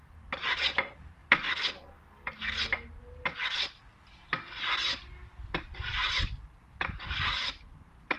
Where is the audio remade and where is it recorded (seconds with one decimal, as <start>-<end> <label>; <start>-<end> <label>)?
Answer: 0.0-1.2 remade; 1.2-6.1 recorded; 6.1-8.2 remade